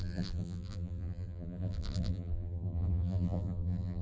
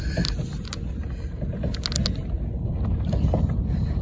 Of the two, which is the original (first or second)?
second